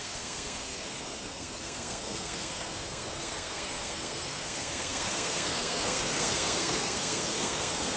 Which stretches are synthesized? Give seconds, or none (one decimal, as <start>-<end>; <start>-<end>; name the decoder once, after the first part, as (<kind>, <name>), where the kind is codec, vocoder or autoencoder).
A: 0.0-8.0 (codec, SNAC)

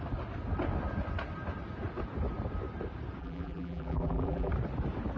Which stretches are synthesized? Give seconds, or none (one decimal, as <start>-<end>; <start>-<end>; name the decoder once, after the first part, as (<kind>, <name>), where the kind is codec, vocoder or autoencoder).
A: 3.2-4.5 (vocoder, BigVGAN v2)